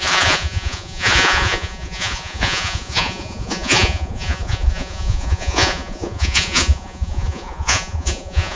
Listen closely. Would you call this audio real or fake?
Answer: fake